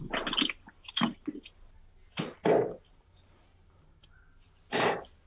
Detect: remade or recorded recorded